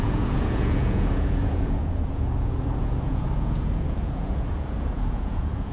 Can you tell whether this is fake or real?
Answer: fake